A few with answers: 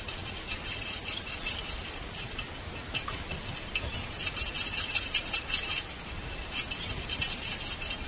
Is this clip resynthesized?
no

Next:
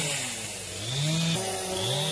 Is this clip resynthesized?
no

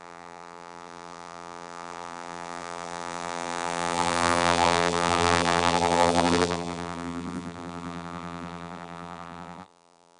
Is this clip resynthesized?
yes